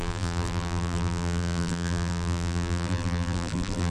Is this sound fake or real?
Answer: fake